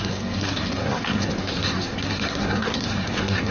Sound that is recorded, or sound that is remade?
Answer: remade